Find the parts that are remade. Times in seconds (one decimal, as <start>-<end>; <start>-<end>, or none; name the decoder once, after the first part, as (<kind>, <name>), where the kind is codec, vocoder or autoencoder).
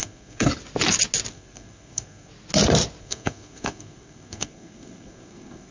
0.0-0.5 (codec, SNAC); 1.3-2.3; 3.0-5.7